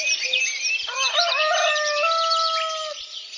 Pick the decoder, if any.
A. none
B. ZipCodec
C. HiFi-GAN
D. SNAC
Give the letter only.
A